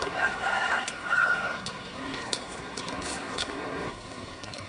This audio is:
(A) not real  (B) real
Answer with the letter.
A